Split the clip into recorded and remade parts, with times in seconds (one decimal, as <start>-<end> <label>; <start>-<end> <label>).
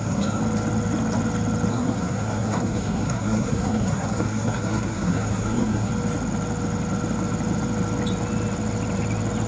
0.0-0.4 remade; 0.4-1.7 recorded; 1.7-5.9 remade; 5.9-9.5 recorded